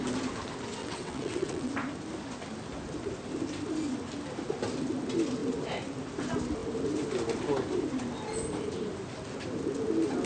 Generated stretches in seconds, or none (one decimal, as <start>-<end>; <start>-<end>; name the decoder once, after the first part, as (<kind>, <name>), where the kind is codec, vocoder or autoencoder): 0.8-1.7 (vocoder, WaveNeXt)

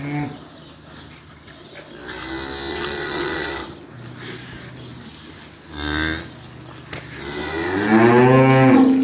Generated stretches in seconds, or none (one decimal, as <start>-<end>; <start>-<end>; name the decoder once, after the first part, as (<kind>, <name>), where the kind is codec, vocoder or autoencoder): 2.7-3.5 (vocoder, WaveNeXt)

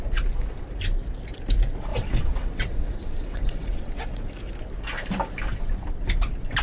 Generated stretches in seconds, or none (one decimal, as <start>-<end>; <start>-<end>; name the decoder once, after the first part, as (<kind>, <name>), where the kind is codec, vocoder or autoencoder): 1.9-4.3 (vocoder, WaveNeXt)

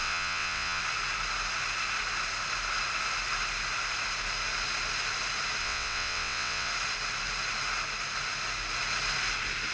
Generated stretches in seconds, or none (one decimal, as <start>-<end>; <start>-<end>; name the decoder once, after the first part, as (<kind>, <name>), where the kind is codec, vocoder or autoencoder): 0.0-0.8 (vocoder, WaveNeXt); 5.6-6.7